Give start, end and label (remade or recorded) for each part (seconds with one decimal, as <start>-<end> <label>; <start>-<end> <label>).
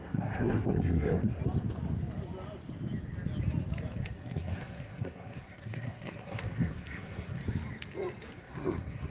0.0-1.4 remade; 1.4-4.0 recorded; 4.0-7.4 remade; 7.4-8.3 recorded; 8.3-9.1 remade